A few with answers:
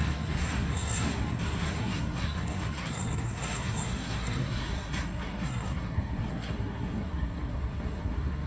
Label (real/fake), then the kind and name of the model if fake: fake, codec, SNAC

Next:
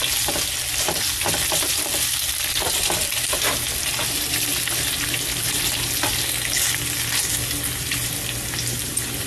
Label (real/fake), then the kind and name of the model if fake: real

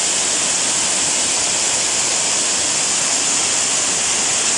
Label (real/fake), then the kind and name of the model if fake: real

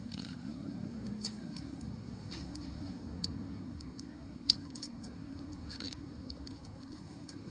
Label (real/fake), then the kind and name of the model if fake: fake, codec, SNAC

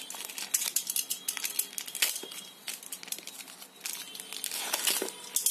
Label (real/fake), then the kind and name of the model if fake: real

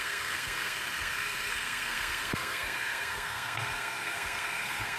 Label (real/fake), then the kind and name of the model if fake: fake, codec, SNAC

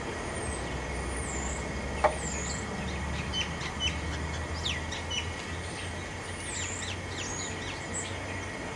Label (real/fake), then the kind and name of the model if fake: real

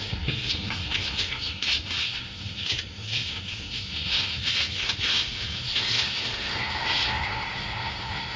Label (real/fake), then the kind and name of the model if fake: fake, codec, SNAC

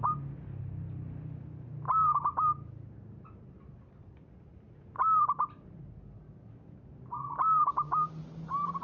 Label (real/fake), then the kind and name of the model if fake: real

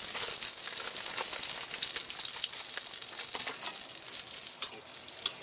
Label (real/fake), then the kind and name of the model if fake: real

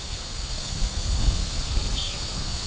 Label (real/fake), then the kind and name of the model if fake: fake, codec, SNAC